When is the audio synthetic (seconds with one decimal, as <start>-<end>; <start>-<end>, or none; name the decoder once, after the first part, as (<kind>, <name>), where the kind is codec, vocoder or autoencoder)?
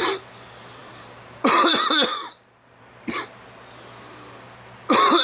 0.8-1.7 (vocoder, BigVGAN v2); 2.1-2.8